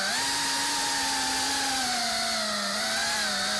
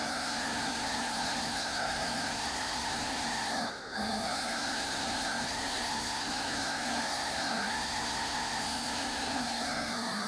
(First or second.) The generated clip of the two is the second